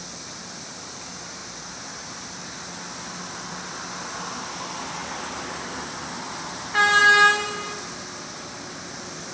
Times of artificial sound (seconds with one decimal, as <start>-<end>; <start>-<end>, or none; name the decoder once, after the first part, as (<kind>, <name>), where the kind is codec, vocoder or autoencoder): none